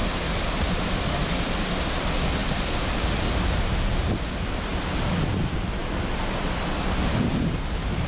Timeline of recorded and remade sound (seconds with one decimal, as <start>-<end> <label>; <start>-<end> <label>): 0.0-2.4 remade; 2.4-4.3 recorded; 4.3-4.7 remade; 4.7-5.3 recorded; 5.3-8.1 remade